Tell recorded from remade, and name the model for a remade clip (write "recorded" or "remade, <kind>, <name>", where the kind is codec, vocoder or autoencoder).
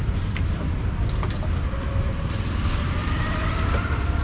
remade, vocoder, BigVGAN v2